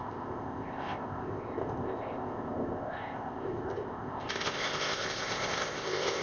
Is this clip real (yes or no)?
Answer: no